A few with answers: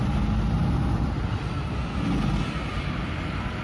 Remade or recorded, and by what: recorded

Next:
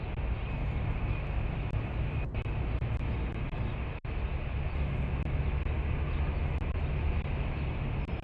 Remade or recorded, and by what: recorded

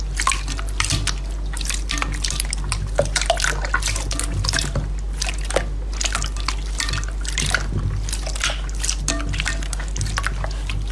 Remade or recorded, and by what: recorded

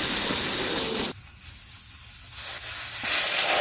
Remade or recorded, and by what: recorded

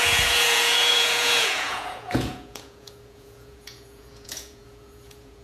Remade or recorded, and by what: remade, vocoder, Vocos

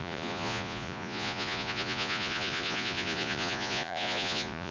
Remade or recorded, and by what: remade, vocoder, Vocos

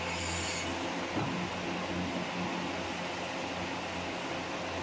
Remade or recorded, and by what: recorded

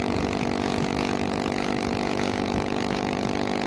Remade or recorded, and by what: remade, vocoder, Vocos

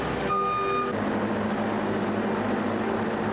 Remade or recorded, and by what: recorded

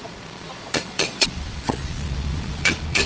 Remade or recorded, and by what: remade, vocoder, Vocos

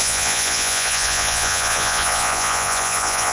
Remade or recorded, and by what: remade, vocoder, Vocos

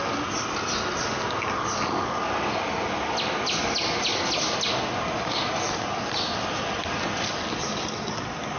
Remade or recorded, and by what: recorded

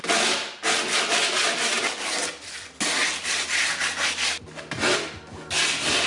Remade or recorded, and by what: recorded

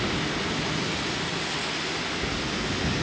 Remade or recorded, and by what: recorded